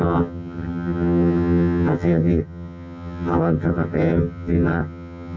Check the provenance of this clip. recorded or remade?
remade